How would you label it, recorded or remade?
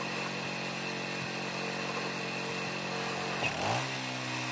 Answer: recorded